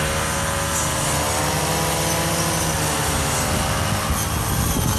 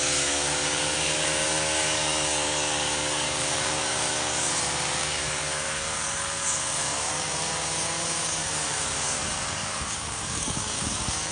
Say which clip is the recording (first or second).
first